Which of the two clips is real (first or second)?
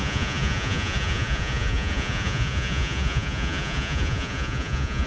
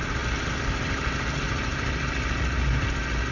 second